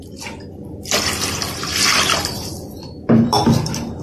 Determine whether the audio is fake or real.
fake